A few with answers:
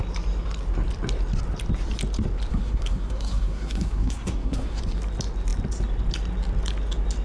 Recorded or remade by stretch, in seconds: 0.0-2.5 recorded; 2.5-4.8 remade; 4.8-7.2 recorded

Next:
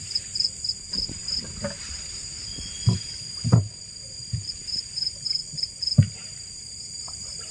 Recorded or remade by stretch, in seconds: 0.0-5.4 recorded; 5.4-7.5 remade